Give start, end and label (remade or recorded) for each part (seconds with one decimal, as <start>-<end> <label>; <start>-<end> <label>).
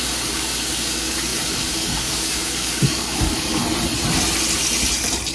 0.0-3.6 remade; 3.6-5.3 recorded